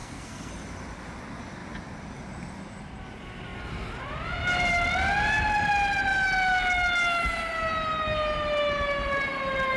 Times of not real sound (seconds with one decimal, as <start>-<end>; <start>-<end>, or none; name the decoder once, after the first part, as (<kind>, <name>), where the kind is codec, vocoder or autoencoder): 0.0-0.5 (codec, SNAC)